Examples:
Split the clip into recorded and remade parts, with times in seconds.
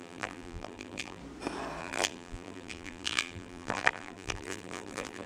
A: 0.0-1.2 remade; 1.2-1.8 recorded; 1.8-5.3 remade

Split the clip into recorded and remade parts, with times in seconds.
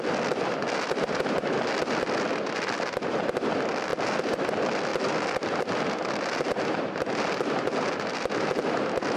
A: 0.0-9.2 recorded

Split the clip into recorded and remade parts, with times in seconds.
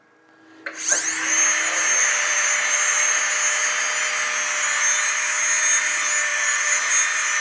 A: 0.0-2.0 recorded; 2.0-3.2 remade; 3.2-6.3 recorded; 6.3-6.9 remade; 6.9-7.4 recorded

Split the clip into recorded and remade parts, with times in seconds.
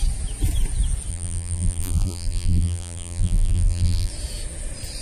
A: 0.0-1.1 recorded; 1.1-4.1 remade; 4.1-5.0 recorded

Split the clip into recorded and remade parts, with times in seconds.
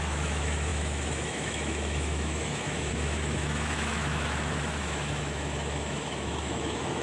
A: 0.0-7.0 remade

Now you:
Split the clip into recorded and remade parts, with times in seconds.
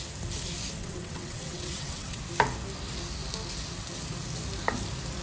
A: 0.0-0.8 recorded; 0.8-2.2 remade; 2.2-5.2 recorded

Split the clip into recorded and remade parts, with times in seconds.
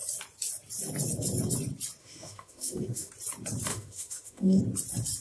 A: 0.0-2.0 recorded; 2.0-3.1 remade; 3.1-3.7 recorded; 3.7-4.6 remade; 4.6-5.2 recorded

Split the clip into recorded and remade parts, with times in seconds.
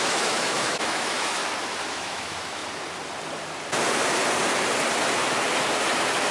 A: 0.0-1.4 remade; 1.4-1.9 recorded; 1.9-2.6 remade; 2.6-6.3 recorded